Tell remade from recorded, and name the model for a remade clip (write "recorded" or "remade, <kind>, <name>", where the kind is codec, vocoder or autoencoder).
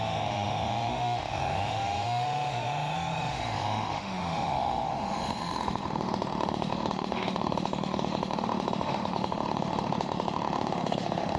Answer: remade, autoencoder, DAC-VAE